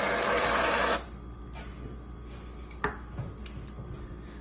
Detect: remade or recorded recorded